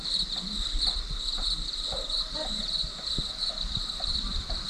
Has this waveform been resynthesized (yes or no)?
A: no